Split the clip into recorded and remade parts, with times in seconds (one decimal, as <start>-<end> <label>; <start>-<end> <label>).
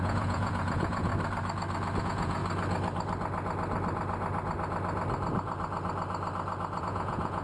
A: 0.0-1.1 remade; 1.1-2.0 recorded; 2.0-2.4 remade; 2.4-6.8 recorded; 6.8-7.4 remade